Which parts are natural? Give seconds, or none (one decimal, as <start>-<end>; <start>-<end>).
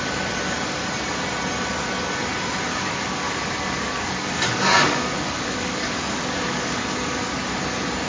0.0-2.7; 7.3-8.1